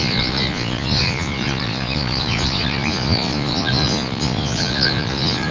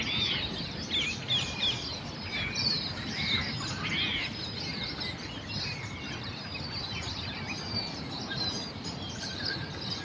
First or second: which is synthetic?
first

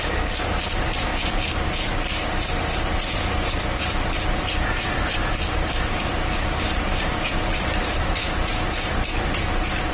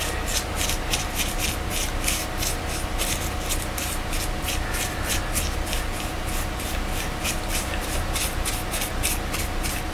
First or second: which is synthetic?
first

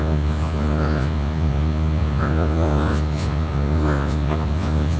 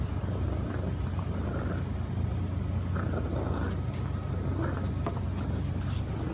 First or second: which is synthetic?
first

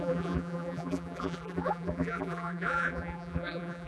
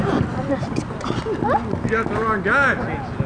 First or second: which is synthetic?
first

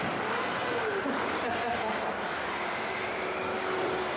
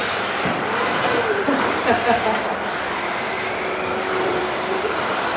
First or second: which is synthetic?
second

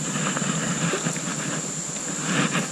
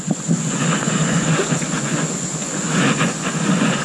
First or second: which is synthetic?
second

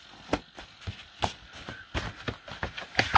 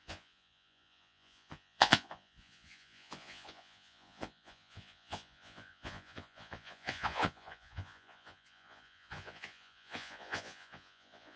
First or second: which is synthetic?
second